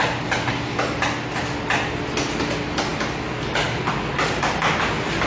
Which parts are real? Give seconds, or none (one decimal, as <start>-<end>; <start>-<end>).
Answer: 0.0-5.3

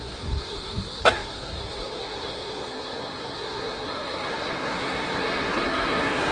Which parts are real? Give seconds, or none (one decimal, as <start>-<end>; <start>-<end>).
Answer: none